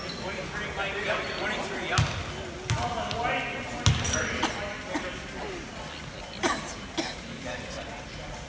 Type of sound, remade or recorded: recorded